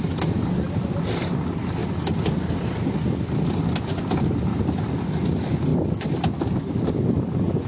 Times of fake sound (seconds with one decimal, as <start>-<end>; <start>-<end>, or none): none